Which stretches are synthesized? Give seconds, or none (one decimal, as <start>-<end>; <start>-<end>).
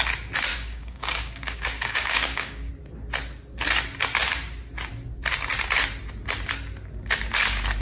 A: 0.5-2.7